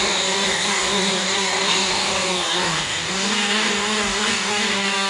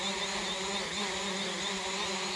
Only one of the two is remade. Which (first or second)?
first